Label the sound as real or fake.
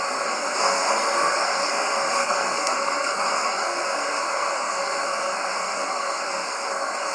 fake